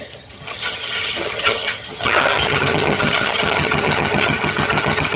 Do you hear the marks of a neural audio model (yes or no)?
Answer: yes